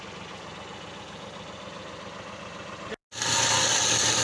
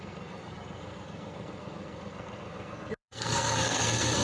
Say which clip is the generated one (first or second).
second